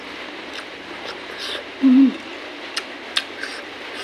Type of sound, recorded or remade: recorded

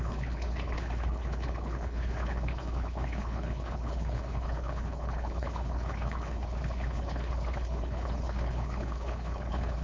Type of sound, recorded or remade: remade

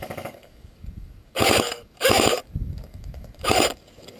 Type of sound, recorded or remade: remade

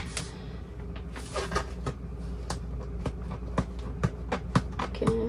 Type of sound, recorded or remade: recorded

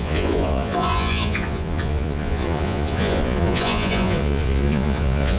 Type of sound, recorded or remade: remade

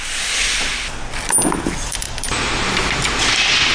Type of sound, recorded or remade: recorded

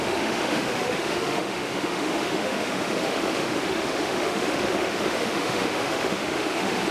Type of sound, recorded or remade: remade